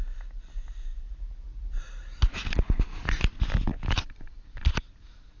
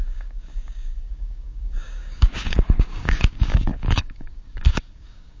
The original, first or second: first